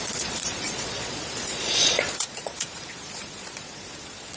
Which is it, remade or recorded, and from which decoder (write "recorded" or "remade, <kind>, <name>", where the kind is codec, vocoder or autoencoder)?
remade, vocoder, Vocos